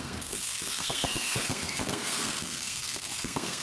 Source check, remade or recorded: remade